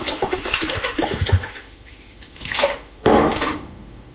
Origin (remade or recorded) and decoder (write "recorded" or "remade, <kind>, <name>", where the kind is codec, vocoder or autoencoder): remade, autoencoder, DAC-VAE